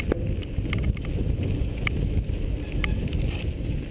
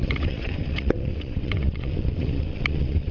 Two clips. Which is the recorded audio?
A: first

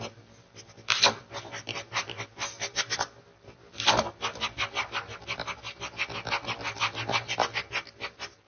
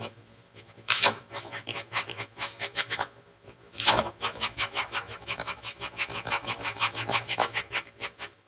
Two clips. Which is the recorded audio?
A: first